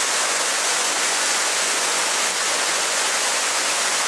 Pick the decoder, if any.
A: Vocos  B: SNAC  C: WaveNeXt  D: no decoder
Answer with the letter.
A